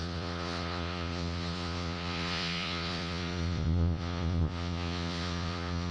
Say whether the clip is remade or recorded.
remade